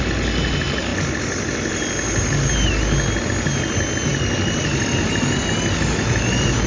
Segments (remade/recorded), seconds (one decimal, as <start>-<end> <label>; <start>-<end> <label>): 0.0-6.7 recorded